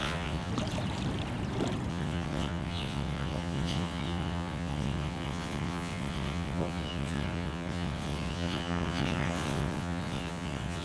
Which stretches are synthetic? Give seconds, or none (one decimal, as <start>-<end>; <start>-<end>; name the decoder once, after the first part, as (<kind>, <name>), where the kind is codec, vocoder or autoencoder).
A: 0.0-0.5 (vocoder, WaveNeXt); 1.9-10.8